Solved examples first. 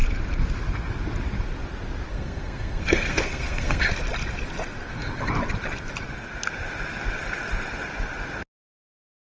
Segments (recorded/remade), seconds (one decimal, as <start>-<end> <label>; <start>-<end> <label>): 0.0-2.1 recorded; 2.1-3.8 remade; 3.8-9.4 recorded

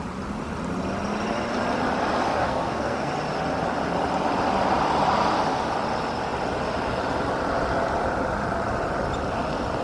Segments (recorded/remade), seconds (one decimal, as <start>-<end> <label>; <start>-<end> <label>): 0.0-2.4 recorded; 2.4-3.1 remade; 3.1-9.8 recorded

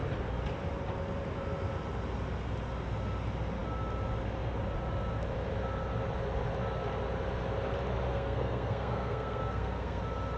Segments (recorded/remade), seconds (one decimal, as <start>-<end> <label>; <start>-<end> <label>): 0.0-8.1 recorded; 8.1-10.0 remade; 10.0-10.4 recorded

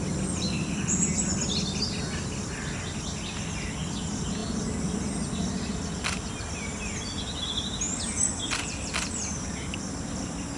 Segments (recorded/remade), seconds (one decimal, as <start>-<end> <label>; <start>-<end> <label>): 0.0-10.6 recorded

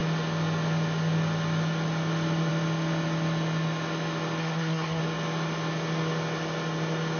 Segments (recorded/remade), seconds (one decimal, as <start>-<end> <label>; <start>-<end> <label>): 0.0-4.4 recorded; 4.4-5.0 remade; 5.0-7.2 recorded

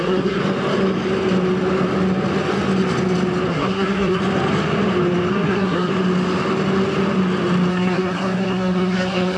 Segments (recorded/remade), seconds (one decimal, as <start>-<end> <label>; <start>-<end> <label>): 0.0-0.4 remade; 0.4-3.5 recorded; 3.5-4.2 remade; 4.2-5.3 recorded; 5.3-5.9 remade; 5.9-7.7 recorded; 7.7-9.4 remade

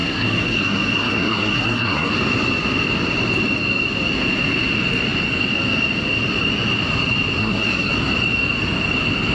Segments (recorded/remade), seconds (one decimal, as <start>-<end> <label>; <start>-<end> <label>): 0.0-2.1 remade; 2.1-7.4 recorded; 7.4-7.9 remade; 7.9-9.3 recorded